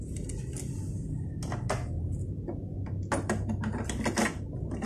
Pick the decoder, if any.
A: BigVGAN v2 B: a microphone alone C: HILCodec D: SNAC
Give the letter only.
B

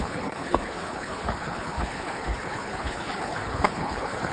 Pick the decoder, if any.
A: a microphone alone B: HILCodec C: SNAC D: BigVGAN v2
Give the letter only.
B